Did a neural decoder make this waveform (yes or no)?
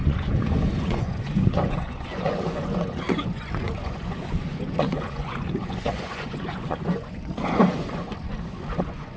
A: yes